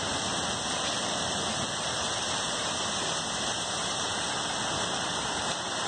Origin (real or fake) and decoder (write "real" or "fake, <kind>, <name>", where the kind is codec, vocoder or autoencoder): real